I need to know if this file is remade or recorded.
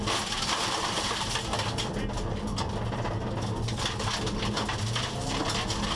recorded